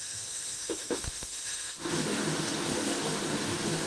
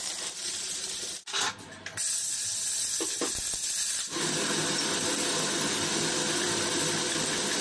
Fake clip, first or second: first